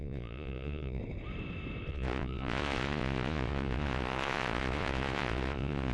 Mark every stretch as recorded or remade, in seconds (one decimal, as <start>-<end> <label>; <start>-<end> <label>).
0.0-1.0 remade; 1.0-1.9 recorded; 1.9-5.9 remade

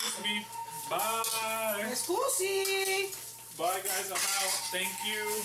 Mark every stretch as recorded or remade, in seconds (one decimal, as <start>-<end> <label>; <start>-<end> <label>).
0.0-5.4 recorded

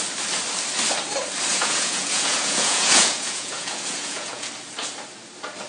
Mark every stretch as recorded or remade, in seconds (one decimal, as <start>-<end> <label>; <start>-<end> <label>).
0.0-1.5 recorded; 1.5-4.5 remade; 4.5-5.7 recorded